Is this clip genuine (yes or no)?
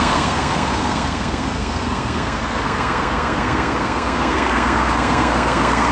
no